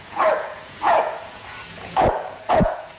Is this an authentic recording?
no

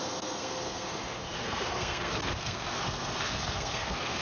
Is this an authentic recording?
no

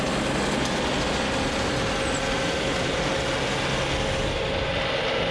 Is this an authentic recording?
yes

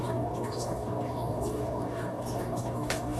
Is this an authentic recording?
no